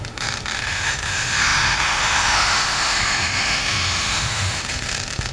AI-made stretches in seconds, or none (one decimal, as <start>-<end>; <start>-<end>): 0.0-5.3